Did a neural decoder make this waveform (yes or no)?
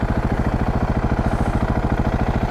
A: no